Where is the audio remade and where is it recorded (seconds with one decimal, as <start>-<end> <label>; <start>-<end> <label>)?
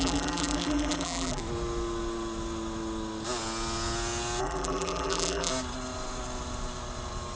0.0-1.4 remade; 1.4-4.4 recorded; 4.4-5.5 remade; 5.5-7.4 recorded